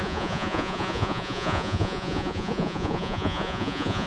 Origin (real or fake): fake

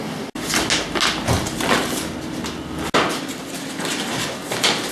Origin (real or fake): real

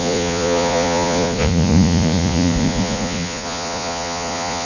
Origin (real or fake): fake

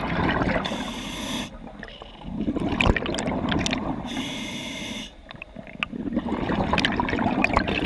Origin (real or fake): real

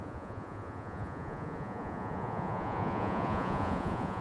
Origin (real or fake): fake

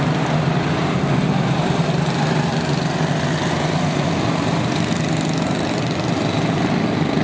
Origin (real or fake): real